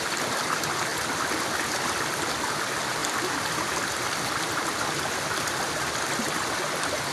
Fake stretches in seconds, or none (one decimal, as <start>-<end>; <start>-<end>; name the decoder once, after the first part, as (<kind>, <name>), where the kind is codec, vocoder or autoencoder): none